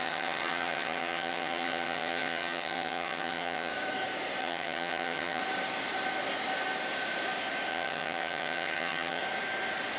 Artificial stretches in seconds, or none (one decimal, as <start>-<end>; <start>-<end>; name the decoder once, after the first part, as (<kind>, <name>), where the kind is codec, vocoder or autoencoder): 0.0-3.7 (vocoder, HiFi-GAN); 4.4-5.4; 7.7-9.2